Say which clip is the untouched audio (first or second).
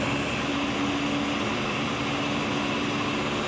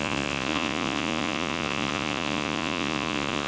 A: first